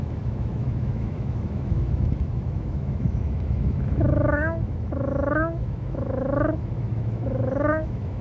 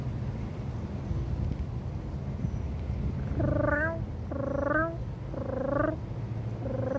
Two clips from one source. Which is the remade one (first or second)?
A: first